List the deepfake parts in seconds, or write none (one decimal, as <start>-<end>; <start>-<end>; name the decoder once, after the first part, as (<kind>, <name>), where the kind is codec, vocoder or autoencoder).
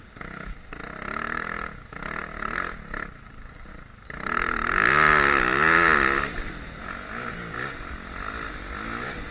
none